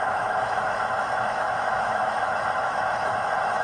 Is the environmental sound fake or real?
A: fake